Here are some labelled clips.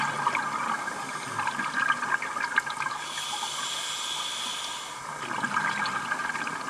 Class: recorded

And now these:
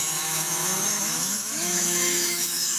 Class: remade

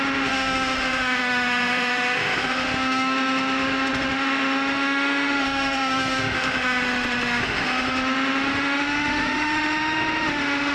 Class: remade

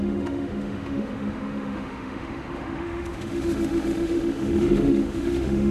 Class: remade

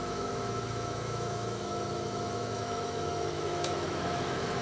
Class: remade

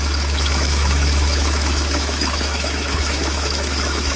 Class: remade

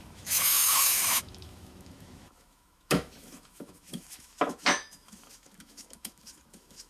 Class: remade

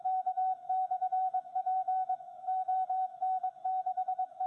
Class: remade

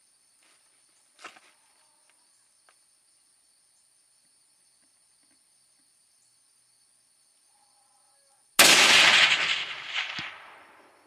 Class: recorded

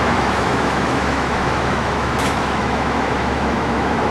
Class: remade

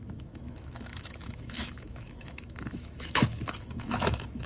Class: remade